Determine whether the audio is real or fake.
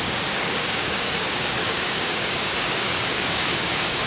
fake